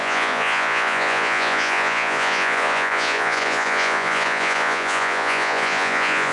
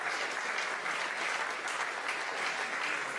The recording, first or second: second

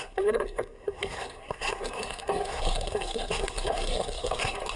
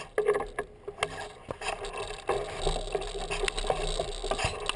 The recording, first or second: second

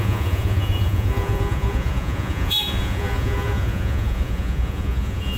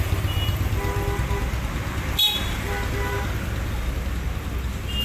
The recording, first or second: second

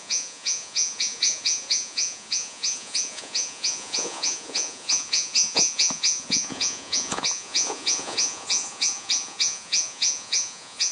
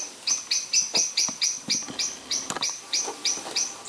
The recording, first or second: second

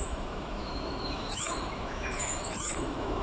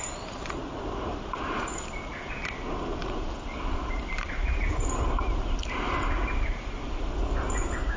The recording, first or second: second